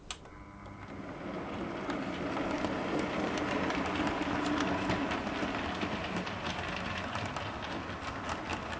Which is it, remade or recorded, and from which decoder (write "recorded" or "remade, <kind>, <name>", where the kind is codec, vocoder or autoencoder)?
recorded